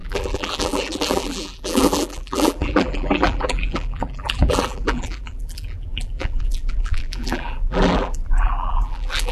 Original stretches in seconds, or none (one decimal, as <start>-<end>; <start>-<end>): none